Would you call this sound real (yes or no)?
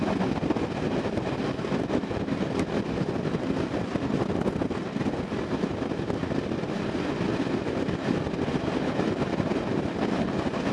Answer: yes